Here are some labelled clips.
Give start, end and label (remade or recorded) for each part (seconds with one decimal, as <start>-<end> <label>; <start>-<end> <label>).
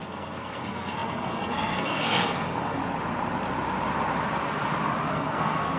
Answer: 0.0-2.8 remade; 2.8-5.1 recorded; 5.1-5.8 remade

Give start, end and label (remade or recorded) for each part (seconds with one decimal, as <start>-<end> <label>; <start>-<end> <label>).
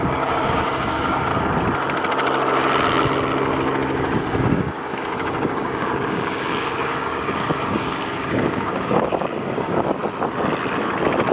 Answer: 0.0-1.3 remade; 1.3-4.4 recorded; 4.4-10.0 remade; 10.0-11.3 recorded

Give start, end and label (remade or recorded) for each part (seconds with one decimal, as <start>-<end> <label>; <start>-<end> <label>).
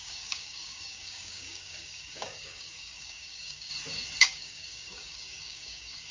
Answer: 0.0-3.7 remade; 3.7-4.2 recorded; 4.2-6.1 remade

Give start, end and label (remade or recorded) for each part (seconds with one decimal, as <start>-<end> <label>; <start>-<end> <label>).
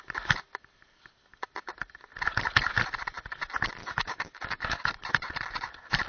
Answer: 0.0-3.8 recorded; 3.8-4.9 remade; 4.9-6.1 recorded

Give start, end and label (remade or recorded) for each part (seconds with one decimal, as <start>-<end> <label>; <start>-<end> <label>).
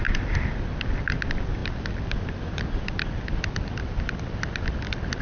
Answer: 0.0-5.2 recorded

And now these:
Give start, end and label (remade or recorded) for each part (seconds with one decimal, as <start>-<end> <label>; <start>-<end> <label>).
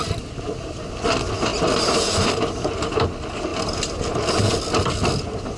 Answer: 0.0-5.6 recorded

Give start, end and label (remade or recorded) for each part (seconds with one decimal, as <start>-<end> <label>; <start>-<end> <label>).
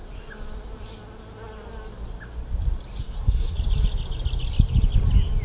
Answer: 0.0-3.0 recorded; 3.0-3.6 remade; 3.6-5.4 recorded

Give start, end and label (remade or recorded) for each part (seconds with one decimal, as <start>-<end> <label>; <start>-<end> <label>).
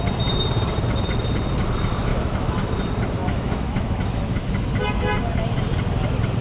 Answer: 0.0-2.1 recorded; 2.1-2.8 remade; 2.8-3.2 recorded; 3.2-4.5 remade; 4.5-6.4 recorded